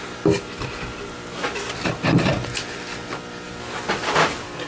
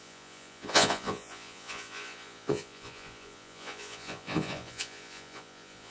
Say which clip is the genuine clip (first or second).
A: first